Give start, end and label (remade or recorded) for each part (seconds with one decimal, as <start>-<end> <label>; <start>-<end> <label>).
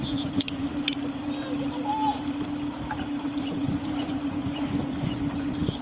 0.0-0.7 remade; 0.7-3.2 recorded; 3.2-5.8 remade